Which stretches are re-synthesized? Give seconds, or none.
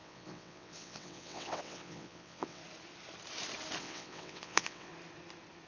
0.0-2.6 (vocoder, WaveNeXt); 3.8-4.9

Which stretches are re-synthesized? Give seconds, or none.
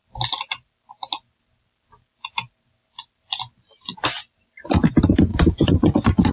5.3-6.3 (vocoder, WaveNeXt)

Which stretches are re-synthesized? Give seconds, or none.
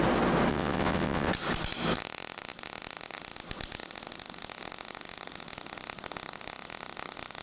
0.5-1.3 (vocoder, WaveNeXt)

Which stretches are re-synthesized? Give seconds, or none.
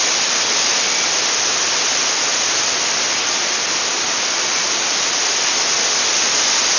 none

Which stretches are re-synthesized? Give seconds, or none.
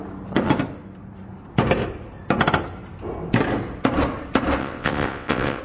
4.6-5.6 (vocoder, WaveNeXt)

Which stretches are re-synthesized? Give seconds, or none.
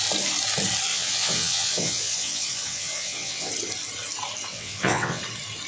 0.9-3.5 (vocoder, WaveNeXt); 4.5-5.2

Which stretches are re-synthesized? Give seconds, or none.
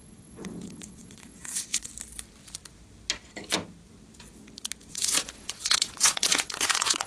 0.0-1.9 (vocoder, WaveNeXt); 4.9-7.1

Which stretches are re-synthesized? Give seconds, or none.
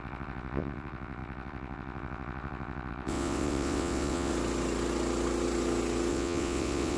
0.0-4.3 (vocoder, WaveNeXt); 6.1-7.0